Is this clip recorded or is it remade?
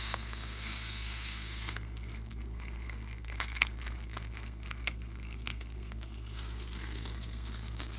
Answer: remade